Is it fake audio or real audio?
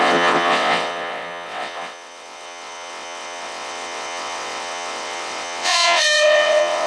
fake